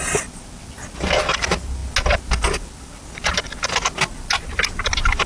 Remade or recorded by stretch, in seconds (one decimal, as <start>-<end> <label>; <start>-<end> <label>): 0.0-5.3 recorded